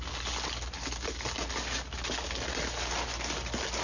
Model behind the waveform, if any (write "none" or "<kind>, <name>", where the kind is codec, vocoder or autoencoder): none